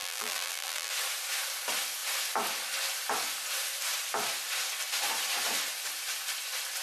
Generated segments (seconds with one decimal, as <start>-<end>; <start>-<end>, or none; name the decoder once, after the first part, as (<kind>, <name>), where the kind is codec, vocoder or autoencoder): 0.0-0.9 (vocoder, BigVGAN v2)